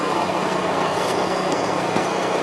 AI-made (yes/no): yes